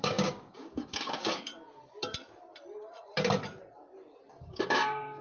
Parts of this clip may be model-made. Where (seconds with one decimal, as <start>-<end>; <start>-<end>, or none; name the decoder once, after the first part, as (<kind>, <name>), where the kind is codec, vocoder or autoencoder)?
0.0-1.5 (codec, DAC); 4.3-5.2